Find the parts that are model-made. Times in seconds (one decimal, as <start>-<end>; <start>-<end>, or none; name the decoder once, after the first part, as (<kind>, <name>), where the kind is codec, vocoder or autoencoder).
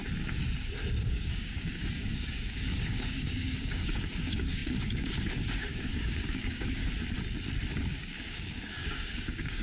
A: 1.0-6.8 (codec, DAC); 7.8-9.6